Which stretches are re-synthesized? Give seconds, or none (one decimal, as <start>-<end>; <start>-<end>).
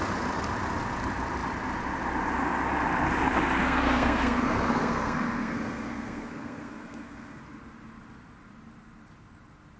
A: 3.6-7.4